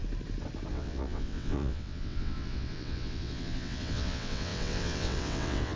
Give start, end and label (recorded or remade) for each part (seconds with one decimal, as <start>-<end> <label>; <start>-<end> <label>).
0.0-0.7 recorded; 0.7-5.8 remade